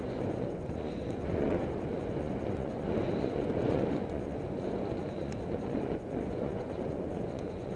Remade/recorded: remade